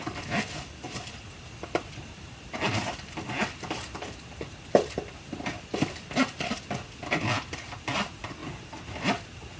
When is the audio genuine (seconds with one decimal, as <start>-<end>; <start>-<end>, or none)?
0.0-9.6